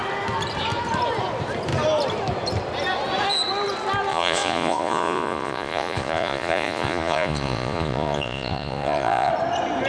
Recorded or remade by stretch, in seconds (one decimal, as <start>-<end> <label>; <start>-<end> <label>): 0.0-4.1 recorded; 4.1-9.3 remade; 9.3-9.9 recorded